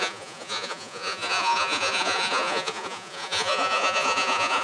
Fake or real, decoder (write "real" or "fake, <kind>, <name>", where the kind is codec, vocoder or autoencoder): fake, vocoder, Vocos